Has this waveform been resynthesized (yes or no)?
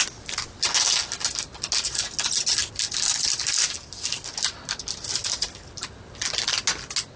no